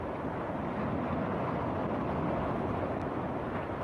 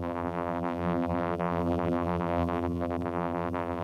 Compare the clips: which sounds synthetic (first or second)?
second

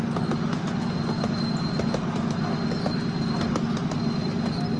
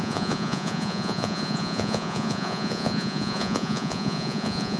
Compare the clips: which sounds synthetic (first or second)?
second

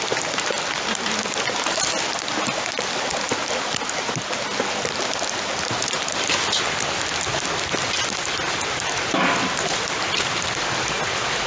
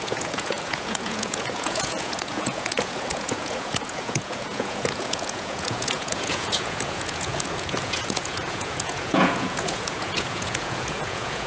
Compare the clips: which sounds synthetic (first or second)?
second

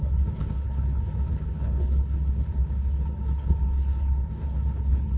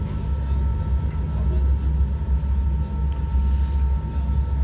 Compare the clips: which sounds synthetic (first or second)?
first